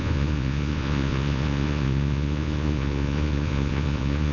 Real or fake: fake